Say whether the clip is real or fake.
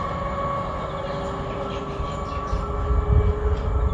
real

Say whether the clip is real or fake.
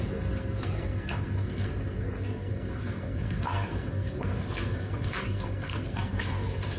fake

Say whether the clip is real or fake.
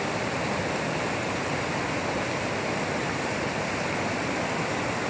real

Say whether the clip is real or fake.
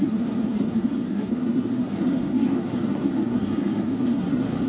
fake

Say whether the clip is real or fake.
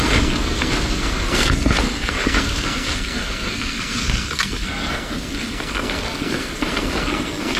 fake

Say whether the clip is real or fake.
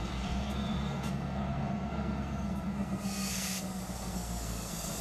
fake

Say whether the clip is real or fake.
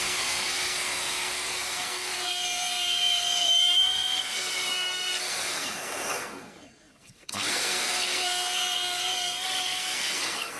fake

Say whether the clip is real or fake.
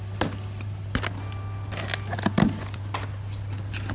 real